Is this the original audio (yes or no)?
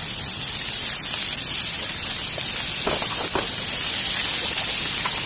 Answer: yes